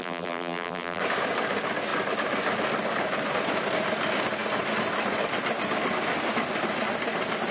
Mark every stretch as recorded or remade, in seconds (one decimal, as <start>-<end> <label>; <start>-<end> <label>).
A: 0.0-1.0 remade; 1.0-7.5 recorded